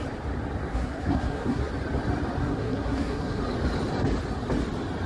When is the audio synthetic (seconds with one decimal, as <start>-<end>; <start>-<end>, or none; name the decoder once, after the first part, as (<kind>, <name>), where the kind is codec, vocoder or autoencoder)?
0.7-1.7 (codec, SNAC); 2.4-3.4